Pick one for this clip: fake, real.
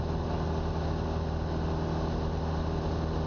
real